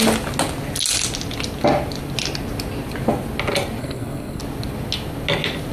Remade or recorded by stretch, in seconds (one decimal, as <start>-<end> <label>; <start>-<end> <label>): 0.0-3.8 recorded; 3.8-4.4 remade; 4.4-5.7 recorded